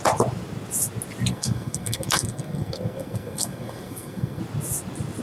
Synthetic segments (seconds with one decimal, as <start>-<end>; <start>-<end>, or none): 1.3-4.4